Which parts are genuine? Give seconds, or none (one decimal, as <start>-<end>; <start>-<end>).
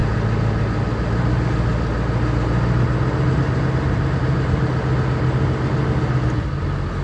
0.0-7.0